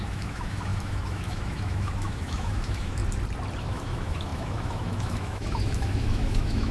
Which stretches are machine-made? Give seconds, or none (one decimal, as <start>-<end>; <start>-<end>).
0.0-3.0; 3.6-6.7